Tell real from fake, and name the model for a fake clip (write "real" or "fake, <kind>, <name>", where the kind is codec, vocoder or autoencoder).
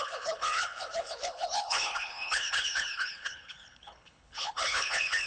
fake, codec, HILCodec